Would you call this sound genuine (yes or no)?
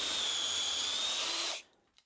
no